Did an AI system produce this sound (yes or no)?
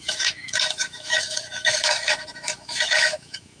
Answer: yes